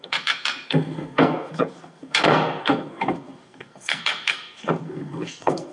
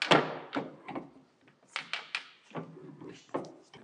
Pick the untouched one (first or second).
second